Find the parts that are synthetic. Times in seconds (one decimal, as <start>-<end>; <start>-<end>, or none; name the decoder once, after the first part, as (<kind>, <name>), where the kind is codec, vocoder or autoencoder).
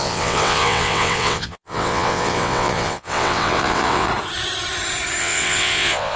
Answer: 0.0-4.1 (vocoder, WaveNeXt); 5.2-6.2